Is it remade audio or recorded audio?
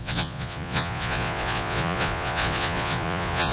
remade